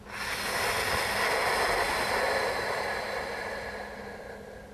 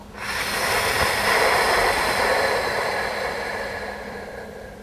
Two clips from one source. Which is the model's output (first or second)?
second